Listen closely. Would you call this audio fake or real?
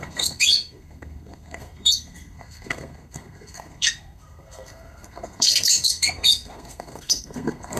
fake